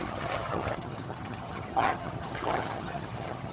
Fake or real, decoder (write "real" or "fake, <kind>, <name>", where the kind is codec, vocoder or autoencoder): fake, vocoder, HiFi-GAN